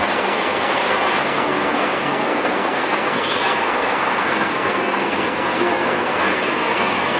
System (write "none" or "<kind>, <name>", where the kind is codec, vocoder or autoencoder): codec, SNAC